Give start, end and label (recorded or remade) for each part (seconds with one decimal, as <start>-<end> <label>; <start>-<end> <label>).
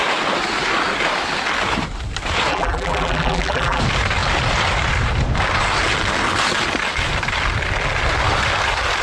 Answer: 0.0-2.5 recorded; 2.5-3.8 remade; 3.8-9.0 recorded